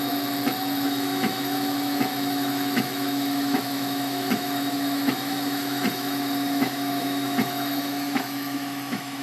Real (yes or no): no